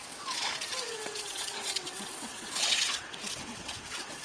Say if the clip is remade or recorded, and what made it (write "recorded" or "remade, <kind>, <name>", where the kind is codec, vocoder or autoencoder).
remade, vocoder, WaveNeXt